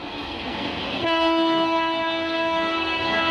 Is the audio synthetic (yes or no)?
yes